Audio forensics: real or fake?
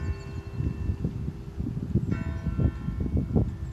real